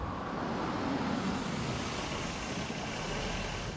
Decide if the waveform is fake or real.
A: real